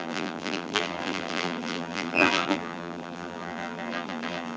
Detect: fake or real fake